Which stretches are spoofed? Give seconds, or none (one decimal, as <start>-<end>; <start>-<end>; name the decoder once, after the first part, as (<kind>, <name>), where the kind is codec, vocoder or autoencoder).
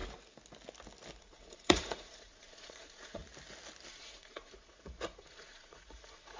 1.2-3.2 (vocoder, Vocos); 3.9-6.4